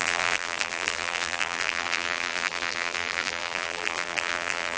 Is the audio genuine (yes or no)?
no